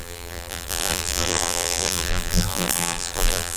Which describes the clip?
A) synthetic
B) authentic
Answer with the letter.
A